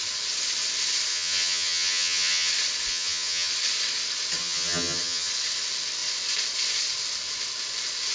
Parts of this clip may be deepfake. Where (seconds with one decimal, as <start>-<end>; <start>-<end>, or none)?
1.1-2.5; 2.9-3.5; 4.4-5.3